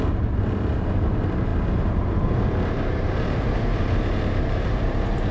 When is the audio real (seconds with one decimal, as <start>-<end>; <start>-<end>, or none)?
none